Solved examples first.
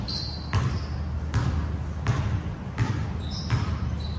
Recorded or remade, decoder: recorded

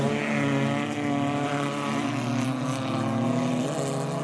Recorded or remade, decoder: recorded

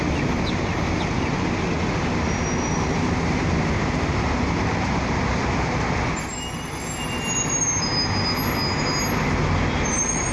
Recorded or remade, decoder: recorded